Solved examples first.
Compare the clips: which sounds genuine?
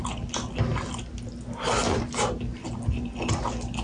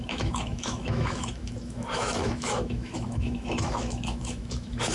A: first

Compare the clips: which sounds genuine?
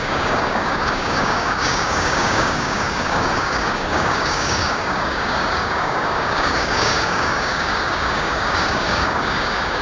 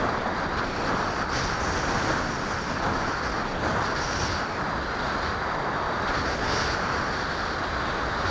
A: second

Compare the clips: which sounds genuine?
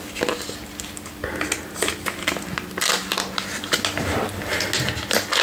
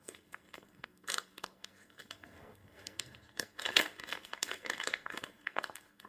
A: first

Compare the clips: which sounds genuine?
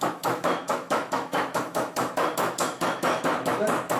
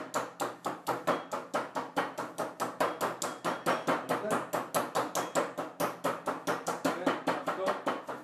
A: second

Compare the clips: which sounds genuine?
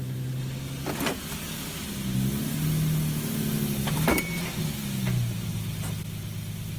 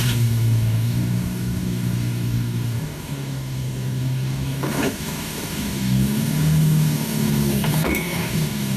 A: first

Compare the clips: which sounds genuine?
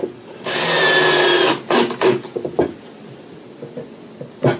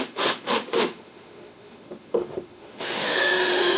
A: first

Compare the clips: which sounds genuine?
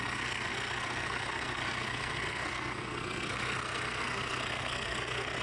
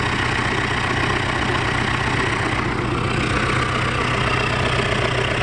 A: second